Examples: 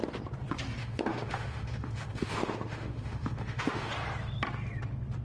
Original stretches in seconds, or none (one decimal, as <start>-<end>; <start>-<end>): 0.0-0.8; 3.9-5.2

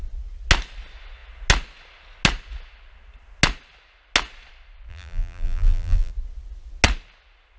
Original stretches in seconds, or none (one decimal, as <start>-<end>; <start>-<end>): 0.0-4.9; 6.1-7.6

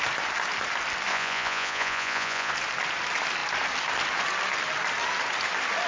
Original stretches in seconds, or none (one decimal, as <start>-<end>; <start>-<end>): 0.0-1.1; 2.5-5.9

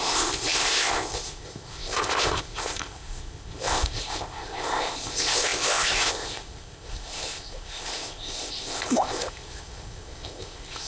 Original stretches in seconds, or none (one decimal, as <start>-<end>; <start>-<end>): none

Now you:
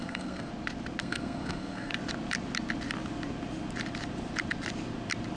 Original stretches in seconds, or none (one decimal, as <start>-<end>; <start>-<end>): 0.5-1.0; 1.9-5.4

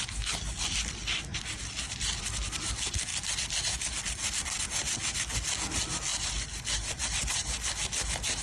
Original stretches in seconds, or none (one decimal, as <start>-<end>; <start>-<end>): 0.0-8.4

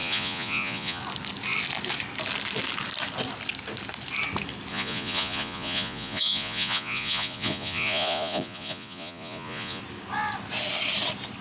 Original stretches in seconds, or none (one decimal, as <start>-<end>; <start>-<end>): 1.0-4.7; 9.8-11.4